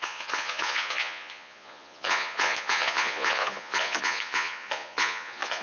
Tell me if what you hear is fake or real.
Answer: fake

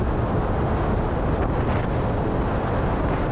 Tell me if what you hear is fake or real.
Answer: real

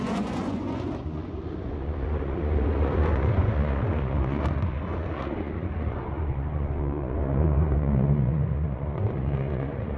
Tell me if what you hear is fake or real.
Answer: fake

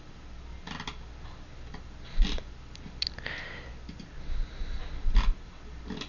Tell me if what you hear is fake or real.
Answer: real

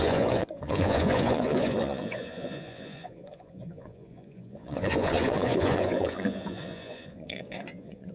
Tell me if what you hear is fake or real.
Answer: fake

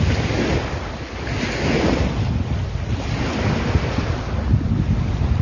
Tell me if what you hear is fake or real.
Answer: real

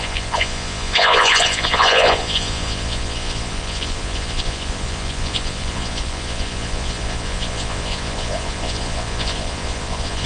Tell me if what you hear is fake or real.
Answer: fake